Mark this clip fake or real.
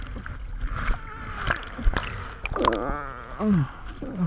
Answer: real